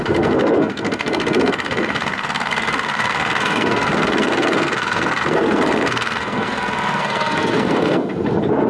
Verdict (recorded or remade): remade